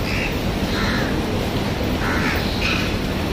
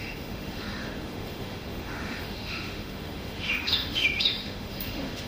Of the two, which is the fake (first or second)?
second